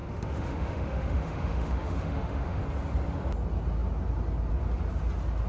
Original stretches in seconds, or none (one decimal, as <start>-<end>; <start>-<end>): 2.6-5.5